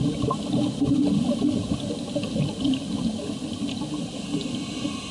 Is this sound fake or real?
real